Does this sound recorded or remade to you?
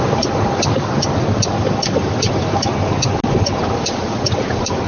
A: recorded